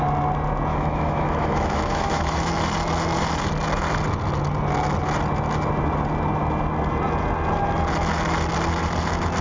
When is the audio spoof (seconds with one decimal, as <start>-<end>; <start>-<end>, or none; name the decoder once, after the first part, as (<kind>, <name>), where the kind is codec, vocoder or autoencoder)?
0.7-2.5 (autoencoder, DAC-VAE)